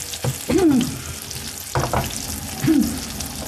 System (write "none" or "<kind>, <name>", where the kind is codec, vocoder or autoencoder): none